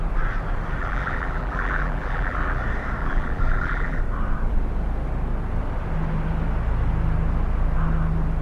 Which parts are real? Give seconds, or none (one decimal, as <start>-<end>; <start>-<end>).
0.0-0.8; 2.6-3.0; 4.0-8.4